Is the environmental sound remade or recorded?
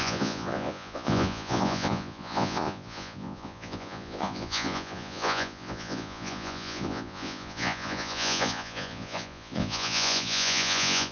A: remade